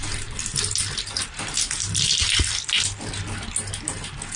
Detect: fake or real real